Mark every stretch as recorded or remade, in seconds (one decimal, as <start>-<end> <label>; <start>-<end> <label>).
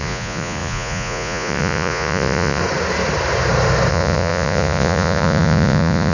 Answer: 0.0-2.6 remade; 2.6-3.9 recorded; 3.9-6.1 remade